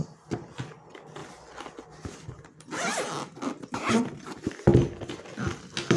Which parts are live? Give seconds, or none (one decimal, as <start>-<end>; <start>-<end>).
0.0-6.0

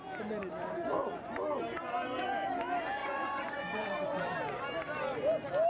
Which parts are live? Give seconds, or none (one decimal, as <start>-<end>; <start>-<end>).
0.0-0.6; 1.4-3.0; 4.2-5.7

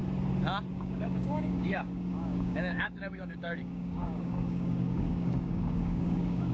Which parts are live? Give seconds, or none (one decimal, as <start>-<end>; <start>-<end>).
0.0-0.7

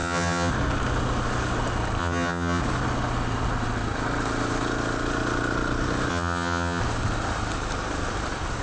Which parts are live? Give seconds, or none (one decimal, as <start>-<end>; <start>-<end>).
0.5-2.0; 2.6-6.1; 6.8-8.6

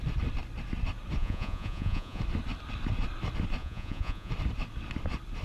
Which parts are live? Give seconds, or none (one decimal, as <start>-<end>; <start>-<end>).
0.0-1.2; 2.2-3.6; 4.3-5.4

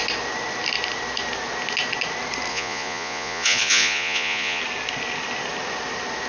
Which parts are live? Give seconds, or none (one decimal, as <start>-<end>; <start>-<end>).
0.0-2.5; 4.6-6.3

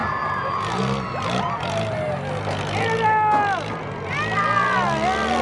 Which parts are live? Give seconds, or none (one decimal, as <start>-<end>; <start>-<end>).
0.8-5.4

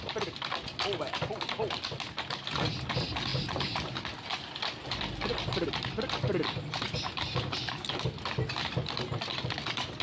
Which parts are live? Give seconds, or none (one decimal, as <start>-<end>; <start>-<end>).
0.0-3.3; 4.0-10.0